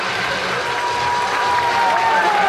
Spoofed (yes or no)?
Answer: no